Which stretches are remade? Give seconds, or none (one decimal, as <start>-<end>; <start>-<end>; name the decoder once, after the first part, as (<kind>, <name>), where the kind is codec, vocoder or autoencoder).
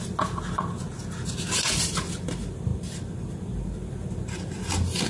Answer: none